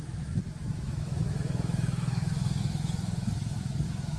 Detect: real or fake fake